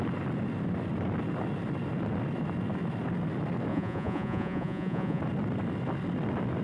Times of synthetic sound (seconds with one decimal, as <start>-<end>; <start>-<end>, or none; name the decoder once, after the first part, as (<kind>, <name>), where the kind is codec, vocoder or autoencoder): 3.7-5.2 (vocoder, Vocos)